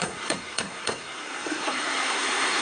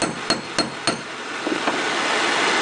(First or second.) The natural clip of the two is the second